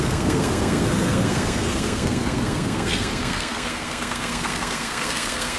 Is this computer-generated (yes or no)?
yes